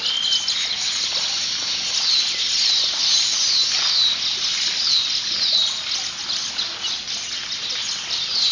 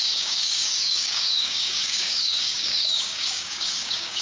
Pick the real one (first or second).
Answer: first